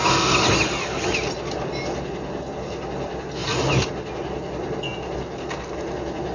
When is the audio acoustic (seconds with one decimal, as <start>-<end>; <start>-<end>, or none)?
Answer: 0.0-6.3